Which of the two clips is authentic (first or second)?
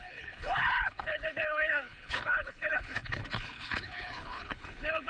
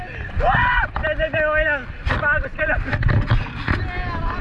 second